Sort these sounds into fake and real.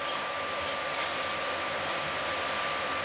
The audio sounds real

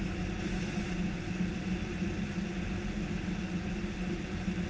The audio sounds real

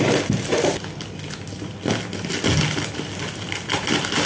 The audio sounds real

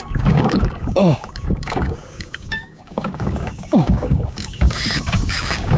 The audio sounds fake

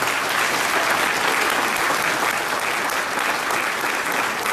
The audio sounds real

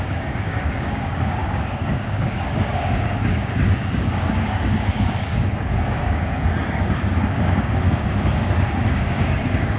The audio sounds fake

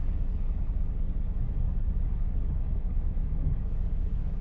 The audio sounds fake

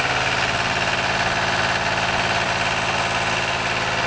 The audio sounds real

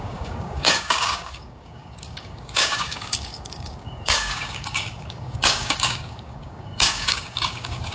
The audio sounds fake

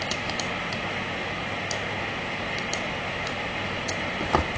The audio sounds real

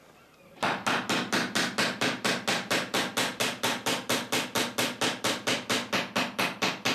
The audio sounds real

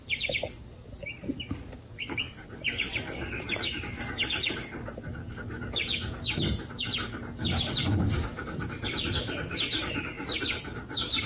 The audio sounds fake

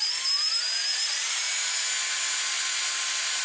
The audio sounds real